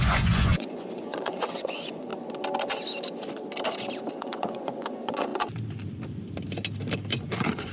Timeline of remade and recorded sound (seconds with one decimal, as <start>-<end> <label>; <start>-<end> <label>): 0.0-2.1 remade; 2.1-4.1 recorded; 4.1-5.3 remade; 5.3-7.2 recorded; 7.2-7.7 remade